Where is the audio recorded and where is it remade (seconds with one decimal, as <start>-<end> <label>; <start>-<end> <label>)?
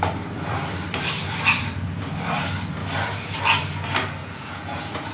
0.0-4.2 recorded; 4.2-5.1 remade